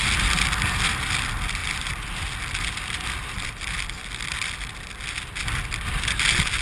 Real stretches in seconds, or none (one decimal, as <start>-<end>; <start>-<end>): 0.0-6.6